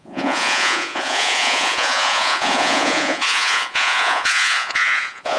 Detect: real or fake fake